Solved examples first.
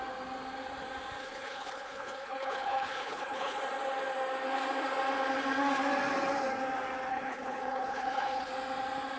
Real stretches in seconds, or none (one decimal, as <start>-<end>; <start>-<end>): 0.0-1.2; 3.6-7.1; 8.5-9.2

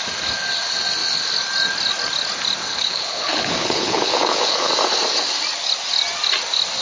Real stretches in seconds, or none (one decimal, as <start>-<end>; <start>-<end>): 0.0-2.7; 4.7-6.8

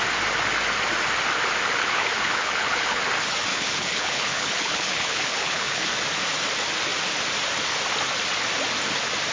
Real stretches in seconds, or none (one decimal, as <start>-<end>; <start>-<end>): 0.0-1.8; 3.0-3.5; 5.9-9.3